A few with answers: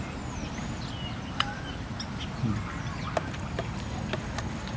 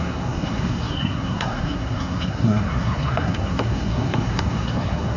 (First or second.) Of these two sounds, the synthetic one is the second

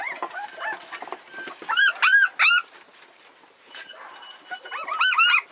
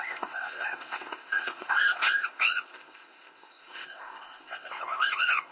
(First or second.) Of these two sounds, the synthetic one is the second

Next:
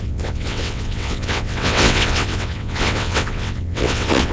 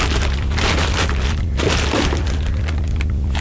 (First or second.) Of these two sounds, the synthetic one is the first